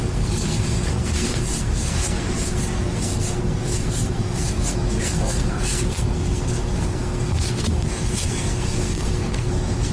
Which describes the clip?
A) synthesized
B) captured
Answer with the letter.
A